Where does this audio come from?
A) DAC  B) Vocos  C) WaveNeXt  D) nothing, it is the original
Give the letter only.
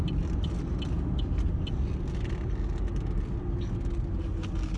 D